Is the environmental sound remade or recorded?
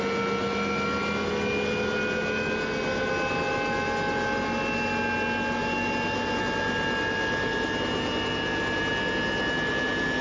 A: recorded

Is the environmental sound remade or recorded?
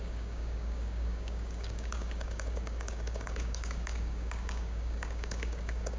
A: remade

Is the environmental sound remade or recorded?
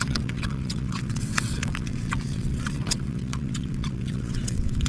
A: remade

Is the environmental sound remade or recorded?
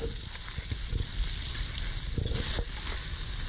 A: recorded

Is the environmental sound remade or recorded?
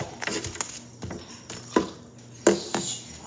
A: recorded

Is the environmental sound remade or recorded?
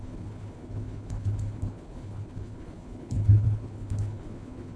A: remade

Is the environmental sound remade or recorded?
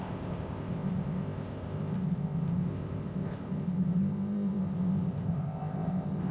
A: remade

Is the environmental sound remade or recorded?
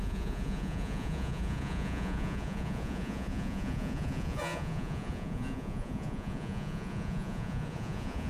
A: remade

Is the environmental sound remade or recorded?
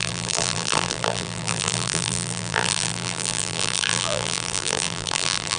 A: remade